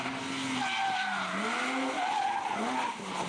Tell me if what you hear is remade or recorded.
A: recorded